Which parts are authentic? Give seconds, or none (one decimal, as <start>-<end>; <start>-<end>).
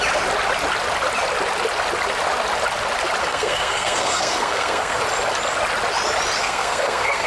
0.0-3.2; 5.0-6.4